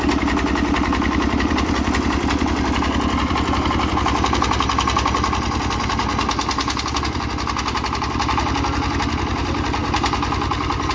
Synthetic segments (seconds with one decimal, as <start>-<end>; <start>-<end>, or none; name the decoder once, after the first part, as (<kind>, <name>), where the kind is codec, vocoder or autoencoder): none